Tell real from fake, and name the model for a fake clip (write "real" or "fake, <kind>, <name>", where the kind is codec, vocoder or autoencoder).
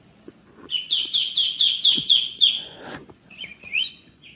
fake, vocoder, Vocos